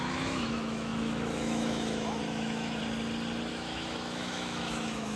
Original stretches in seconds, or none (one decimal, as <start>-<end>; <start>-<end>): 2.8-3.5